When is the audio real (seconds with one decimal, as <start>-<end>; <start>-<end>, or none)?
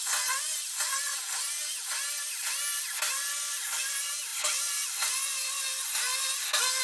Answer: 0.0-6.8